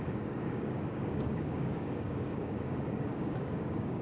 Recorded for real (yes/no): no